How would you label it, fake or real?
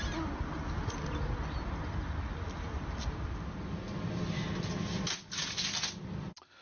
real